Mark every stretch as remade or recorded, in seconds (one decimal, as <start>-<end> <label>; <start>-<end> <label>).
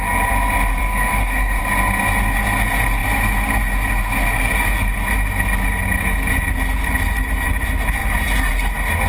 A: 0.0-0.8 recorded; 0.8-1.6 remade; 1.6-9.1 recorded